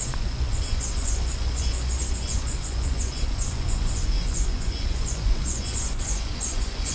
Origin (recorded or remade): remade